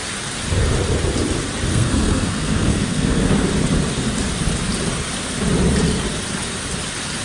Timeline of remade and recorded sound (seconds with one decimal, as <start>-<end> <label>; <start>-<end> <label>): 0.0-1.7 recorded; 1.7-3.5 remade; 3.5-7.2 recorded